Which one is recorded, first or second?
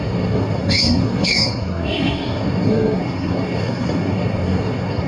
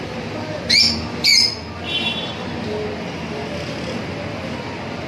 second